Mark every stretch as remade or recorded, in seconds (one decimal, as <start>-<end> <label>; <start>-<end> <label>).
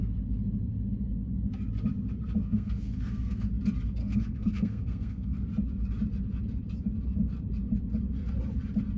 0.0-2.4 recorded; 2.4-3.5 remade; 3.5-4.0 recorded; 4.0-5.4 remade; 5.4-9.0 recorded